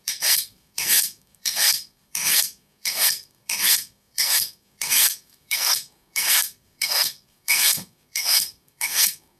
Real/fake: fake